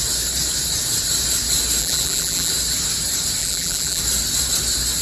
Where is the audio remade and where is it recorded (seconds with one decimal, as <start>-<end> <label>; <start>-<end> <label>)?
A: 0.0-1.8 recorded; 1.8-2.5 remade; 2.5-3.4 recorded; 3.4-4.0 remade; 4.0-5.0 recorded